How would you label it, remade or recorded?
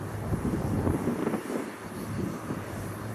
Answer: remade